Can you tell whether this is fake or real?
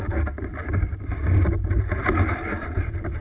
real